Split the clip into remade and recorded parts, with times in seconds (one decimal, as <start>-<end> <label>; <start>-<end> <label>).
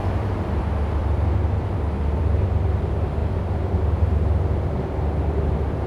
0.0-0.6 remade; 0.6-1.0 recorded; 1.0-2.2 remade; 2.2-5.9 recorded